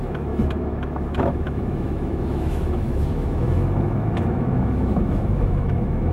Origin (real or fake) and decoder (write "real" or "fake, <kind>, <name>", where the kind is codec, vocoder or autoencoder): fake, autoencoder, DAC-VAE